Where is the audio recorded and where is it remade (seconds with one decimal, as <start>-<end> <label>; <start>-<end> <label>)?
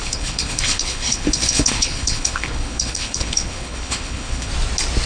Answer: 0.0-4.5 remade; 4.5-5.1 recorded